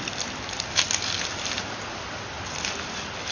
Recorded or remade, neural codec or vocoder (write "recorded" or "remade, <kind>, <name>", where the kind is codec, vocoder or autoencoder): recorded